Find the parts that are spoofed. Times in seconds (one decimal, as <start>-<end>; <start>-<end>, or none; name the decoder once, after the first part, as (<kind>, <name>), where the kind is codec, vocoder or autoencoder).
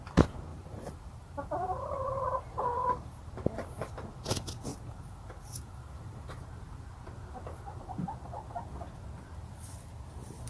0.5-3.3 (vocoder, BigVGAN v2); 4.7-6.5